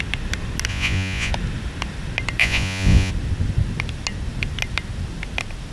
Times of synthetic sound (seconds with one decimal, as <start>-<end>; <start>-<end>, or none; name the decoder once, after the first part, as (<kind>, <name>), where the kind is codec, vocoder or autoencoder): 0.7-1.3 (vocoder, Vocos); 2.4-3.1